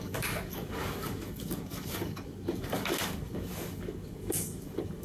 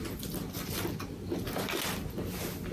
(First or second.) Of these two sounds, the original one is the second